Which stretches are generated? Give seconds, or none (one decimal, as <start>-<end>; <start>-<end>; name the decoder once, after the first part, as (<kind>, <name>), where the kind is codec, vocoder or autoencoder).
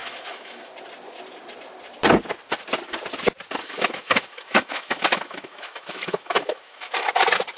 0.0-0.7 (autoencoder, DAC-VAE); 3.6-7.1